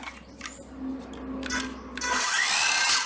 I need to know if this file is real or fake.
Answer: real